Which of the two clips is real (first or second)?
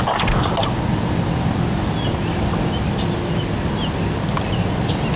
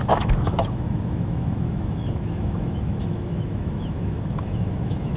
first